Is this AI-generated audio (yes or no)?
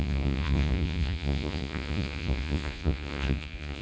yes